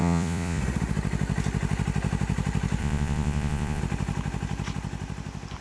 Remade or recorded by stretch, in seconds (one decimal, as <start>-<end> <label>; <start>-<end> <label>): 0.0-0.6 remade; 0.6-2.8 recorded; 2.8-3.8 remade; 3.8-5.6 recorded